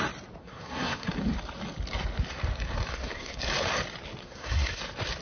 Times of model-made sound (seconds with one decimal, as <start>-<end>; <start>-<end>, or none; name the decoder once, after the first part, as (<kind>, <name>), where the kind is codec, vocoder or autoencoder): 0.4-1.1 (codec, SNAC); 2.9-3.4; 4.2-4.8